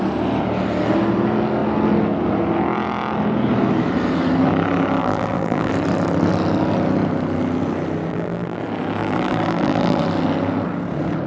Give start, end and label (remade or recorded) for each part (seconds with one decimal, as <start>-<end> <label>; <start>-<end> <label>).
0.0-5.0 recorded; 5.0-5.7 remade; 5.7-8.1 recorded; 8.1-8.6 remade; 8.6-9.0 recorded; 9.0-10.0 remade; 10.0-11.3 recorded